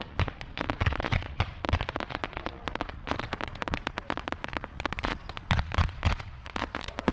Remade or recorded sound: remade